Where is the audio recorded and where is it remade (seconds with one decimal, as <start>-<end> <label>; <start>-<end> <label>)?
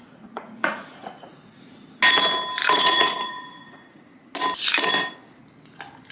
0.0-2.0 remade; 2.0-2.6 recorded; 2.6-4.1 remade; 4.1-6.1 recorded